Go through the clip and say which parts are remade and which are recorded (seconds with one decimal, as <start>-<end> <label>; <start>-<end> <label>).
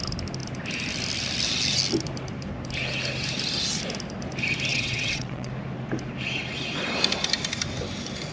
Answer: 0.0-4.7 recorded; 4.7-5.5 remade; 5.5-8.3 recorded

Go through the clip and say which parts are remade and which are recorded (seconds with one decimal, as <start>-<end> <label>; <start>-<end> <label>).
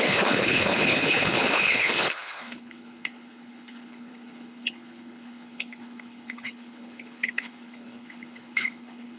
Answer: 0.0-9.2 remade